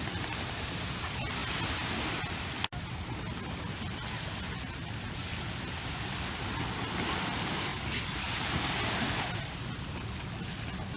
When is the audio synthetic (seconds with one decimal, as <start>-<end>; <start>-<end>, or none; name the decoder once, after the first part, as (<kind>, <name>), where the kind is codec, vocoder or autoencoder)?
7.7-8.7 (codec, DAC)